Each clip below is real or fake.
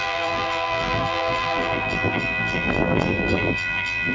fake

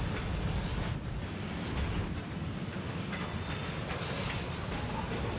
real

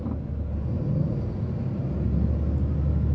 real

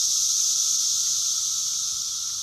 real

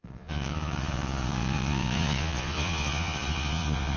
fake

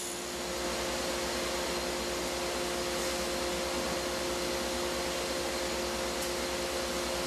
real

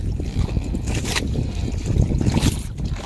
fake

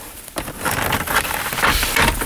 real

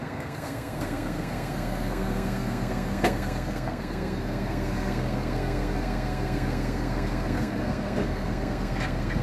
fake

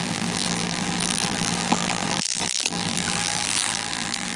fake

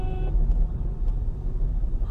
real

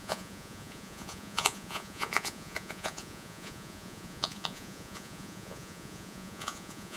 fake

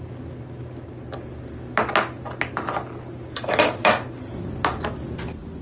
real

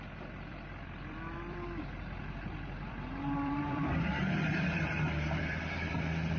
fake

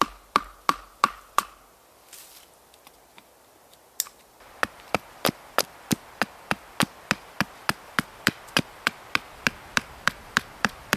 real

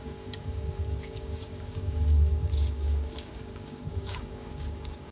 fake